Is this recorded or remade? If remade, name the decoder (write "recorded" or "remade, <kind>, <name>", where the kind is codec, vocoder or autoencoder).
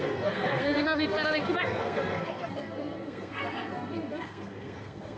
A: remade, codec, SNAC